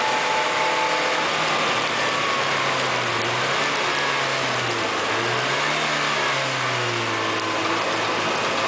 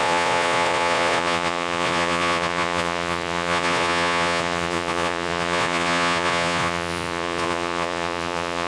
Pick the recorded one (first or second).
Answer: first